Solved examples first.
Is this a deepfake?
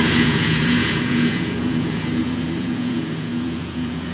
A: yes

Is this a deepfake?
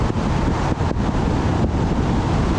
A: no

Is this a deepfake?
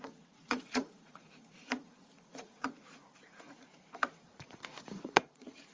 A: yes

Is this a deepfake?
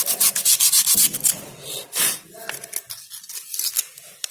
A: no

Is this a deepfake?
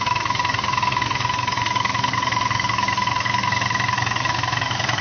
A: yes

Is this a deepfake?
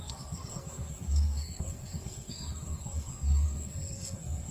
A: yes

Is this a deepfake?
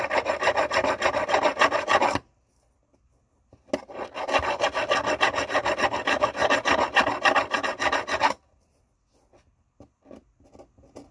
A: no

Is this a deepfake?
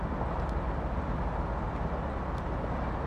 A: no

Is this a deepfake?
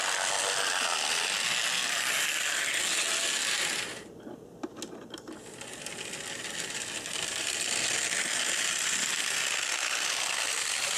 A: no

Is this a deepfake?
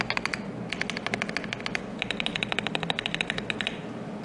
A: no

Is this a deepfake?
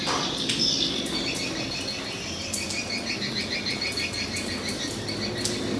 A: no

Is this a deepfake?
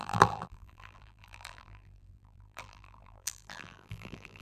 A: yes